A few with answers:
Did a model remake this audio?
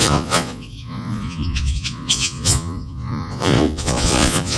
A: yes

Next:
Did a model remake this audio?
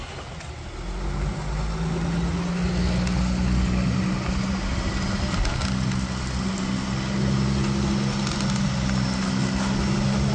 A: no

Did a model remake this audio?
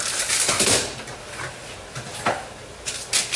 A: no